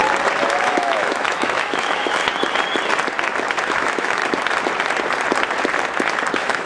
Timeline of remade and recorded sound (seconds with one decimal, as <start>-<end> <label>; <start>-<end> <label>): 0.0-0.6 recorded; 0.6-2.2 remade; 2.2-3.7 recorded; 3.7-4.2 remade; 4.2-6.3 recorded; 6.3-6.7 remade